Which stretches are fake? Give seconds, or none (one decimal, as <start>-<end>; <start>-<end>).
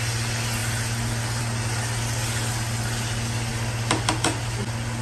none